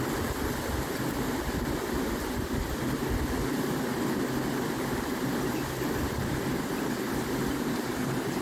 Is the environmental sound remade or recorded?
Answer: recorded